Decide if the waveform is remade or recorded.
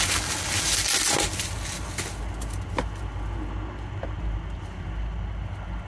recorded